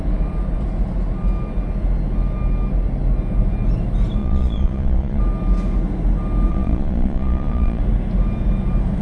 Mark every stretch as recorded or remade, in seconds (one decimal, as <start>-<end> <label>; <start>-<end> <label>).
0.0-4.2 recorded; 4.2-5.2 remade; 5.2-6.5 recorded; 6.5-7.8 remade; 7.8-9.0 recorded